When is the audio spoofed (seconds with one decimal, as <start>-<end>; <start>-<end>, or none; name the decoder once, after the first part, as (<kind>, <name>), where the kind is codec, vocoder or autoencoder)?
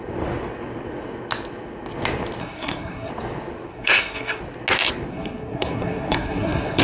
2.4-3.1 (codec, SNAC); 3.7-4.4; 5.1-6.8